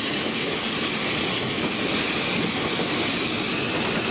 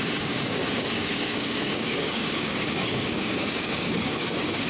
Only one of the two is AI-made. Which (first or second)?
second